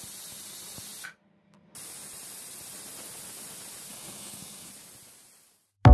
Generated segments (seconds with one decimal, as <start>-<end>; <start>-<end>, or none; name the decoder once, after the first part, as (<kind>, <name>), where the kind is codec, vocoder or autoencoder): 3.9-4.7 (codec, DAC)